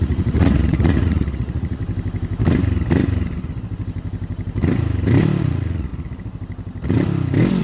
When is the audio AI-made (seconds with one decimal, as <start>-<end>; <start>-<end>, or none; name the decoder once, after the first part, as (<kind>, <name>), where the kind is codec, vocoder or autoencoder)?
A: 0.0-1.8 (vocoder, Vocos); 5.4-5.9